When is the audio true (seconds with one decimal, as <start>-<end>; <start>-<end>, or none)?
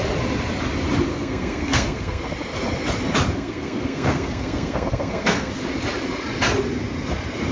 0.0-1.1; 2.2-3.3; 5.5-7.5